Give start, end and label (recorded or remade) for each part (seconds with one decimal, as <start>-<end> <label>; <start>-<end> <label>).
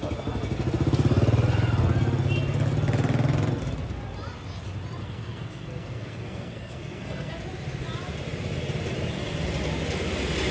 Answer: 0.0-5.0 recorded; 5.0-7.3 remade; 7.3-10.5 recorded